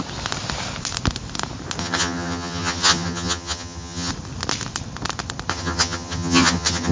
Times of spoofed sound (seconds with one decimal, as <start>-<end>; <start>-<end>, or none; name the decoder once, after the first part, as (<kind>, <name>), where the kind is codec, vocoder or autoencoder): 1.8-4.1 (vocoder, HiFi-GAN); 5.5-6.9